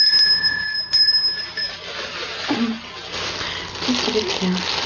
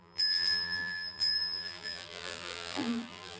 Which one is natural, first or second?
first